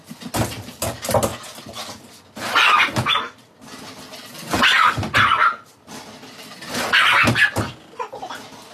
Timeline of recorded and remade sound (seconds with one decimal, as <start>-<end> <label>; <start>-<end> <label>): 0.0-8.7 recorded